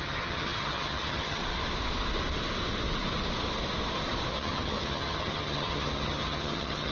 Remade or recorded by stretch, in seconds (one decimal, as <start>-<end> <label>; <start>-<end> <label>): 0.0-1.4 remade; 1.4-4.3 recorded; 4.3-6.9 remade